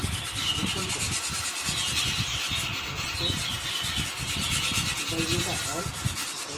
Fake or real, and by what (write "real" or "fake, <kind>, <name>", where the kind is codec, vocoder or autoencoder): real